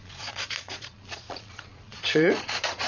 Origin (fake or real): fake